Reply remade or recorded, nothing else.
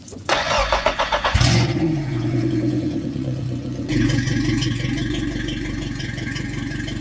remade